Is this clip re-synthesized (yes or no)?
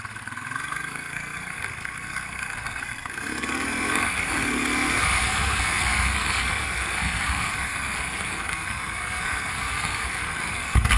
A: yes